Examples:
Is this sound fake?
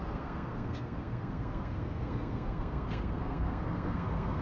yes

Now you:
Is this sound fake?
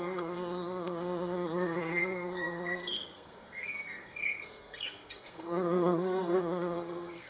yes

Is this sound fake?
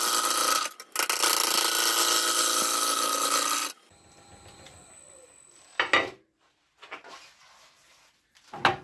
no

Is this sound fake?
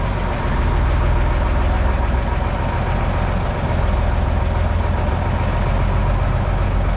no